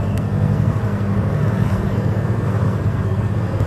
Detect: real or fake fake